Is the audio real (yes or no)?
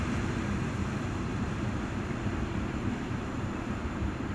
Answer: no